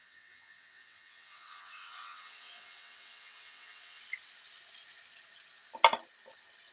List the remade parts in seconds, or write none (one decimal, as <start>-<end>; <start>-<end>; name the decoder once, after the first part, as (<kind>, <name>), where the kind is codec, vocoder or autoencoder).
0.0-4.0 (vocoder, WaveNeXt)